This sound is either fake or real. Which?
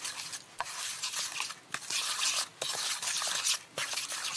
real